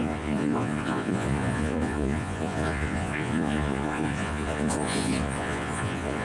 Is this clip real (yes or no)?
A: no